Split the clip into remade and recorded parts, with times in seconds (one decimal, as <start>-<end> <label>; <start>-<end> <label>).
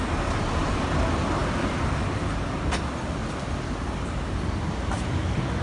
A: 0.0-5.6 recorded